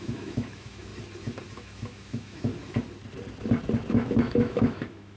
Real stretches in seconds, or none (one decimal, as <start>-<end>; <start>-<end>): 0.9-1.5; 2.5-3.9